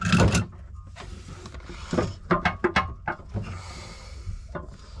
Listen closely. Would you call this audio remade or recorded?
recorded